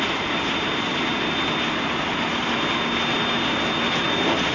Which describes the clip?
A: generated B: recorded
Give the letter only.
B